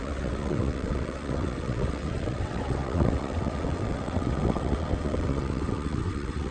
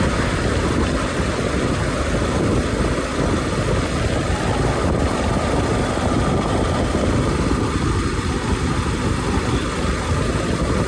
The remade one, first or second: first